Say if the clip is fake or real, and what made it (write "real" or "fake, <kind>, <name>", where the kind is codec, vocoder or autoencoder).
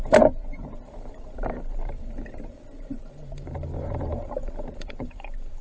fake, vocoder, BigVGAN v2